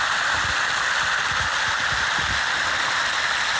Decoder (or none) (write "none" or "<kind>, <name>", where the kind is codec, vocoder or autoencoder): none